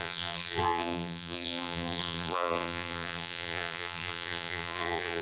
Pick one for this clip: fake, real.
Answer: fake